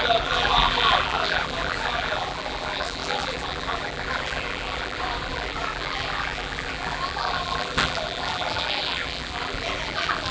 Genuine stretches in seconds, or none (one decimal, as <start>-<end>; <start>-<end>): none